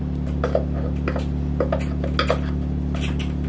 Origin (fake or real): real